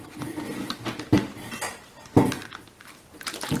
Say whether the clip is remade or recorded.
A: recorded